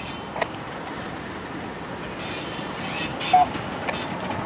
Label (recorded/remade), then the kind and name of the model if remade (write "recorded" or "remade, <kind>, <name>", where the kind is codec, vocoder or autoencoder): recorded